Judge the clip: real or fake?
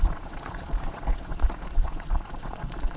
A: fake